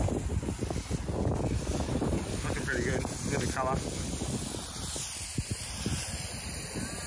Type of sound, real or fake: real